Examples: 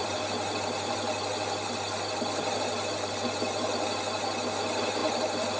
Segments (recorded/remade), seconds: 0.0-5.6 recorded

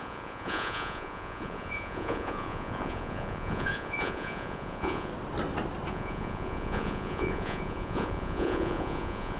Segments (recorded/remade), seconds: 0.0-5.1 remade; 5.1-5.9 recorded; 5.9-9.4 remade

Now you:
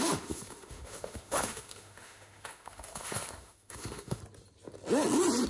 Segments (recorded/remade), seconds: 0.0-4.2 remade; 4.2-5.5 recorded